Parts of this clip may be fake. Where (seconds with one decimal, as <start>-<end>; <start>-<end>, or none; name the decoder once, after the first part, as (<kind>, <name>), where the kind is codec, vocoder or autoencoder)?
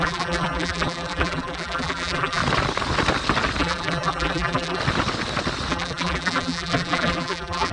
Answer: 0.0-2.4 (vocoder, BigVGAN v2); 3.6-4.8; 5.7-7.7